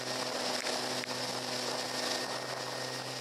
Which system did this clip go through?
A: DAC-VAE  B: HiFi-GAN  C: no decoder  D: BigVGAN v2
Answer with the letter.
C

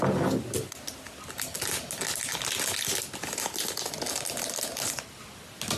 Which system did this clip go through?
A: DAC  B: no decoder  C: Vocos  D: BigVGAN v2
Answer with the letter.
B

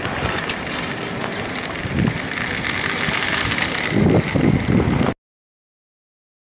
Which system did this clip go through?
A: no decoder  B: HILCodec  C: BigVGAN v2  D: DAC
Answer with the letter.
A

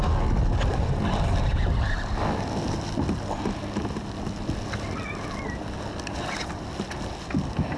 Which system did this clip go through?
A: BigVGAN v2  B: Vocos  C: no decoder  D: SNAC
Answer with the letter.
C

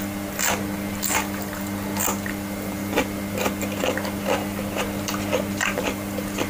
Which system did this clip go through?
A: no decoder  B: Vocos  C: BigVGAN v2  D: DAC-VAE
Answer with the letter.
A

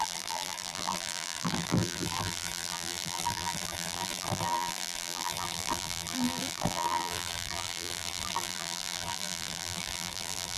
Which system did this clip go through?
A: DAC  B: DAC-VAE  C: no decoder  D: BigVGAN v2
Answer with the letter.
D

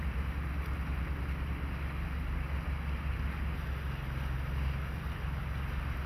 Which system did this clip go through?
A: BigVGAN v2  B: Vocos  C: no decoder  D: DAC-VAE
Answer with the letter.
C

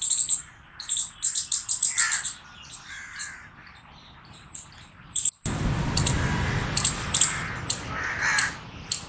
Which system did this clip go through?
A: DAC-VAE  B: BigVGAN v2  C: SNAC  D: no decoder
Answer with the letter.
D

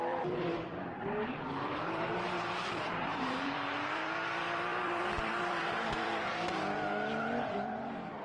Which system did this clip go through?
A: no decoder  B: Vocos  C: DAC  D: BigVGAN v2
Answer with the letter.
D